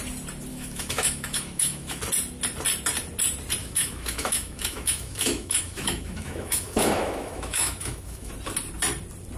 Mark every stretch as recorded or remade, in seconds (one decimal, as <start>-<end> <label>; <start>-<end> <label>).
0.0-0.5 recorded; 0.5-2.0 remade; 2.0-3.6 recorded; 3.6-8.3 remade; 8.3-9.4 recorded